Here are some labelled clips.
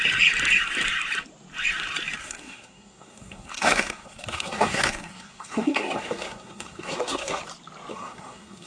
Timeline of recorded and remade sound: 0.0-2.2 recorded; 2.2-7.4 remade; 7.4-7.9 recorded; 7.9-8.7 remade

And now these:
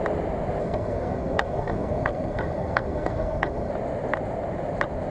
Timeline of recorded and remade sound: 0.0-0.6 recorded; 0.6-3.7 remade; 3.7-5.1 recorded

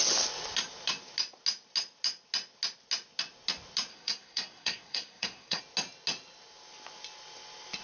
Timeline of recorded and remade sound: 0.0-3.9 recorded; 3.9-5.6 remade; 5.6-7.8 recorded

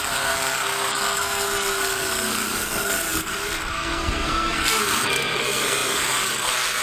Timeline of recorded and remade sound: 0.0-6.8 remade

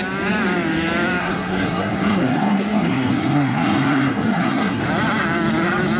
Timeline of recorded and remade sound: 0.0-1.2 recorded; 1.2-4.8 remade; 4.8-6.0 recorded

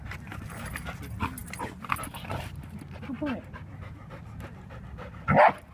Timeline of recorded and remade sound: 0.0-5.7 recorded